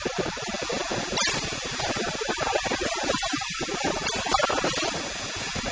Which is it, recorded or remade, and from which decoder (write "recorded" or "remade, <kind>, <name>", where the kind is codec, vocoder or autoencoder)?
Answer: recorded